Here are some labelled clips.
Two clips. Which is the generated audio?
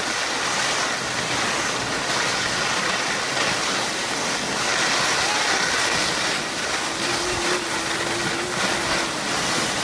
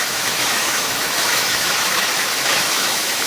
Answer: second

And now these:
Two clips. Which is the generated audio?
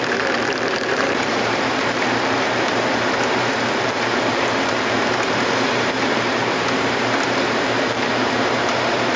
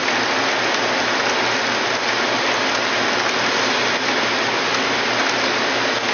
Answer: first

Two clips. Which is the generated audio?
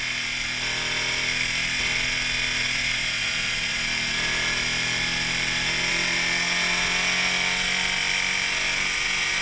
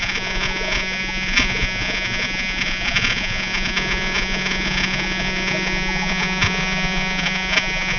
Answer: second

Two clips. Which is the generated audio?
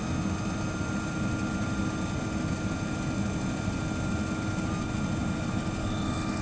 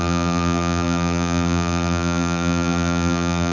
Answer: second